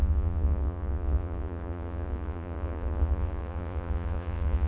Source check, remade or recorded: remade